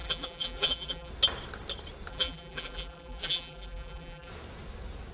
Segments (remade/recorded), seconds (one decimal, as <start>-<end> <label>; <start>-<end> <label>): 0.0-1.1 remade; 1.1-2.1 recorded; 2.1-4.3 remade; 4.3-5.1 recorded